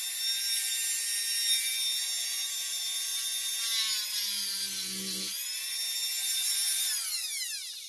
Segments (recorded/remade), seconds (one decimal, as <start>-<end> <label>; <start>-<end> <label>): 0.0-7.9 recorded